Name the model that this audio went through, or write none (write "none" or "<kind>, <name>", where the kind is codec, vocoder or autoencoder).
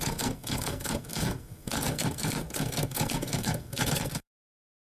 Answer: codec, SNAC